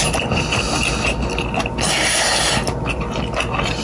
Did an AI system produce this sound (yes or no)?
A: no